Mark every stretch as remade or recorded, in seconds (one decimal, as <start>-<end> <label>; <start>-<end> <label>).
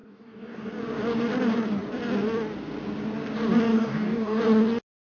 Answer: 0.0-0.7 remade; 0.7-3.7 recorded; 3.7-4.4 remade; 4.4-5.1 recorded